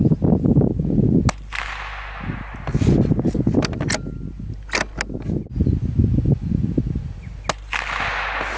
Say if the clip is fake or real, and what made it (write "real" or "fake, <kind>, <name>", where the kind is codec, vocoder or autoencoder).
real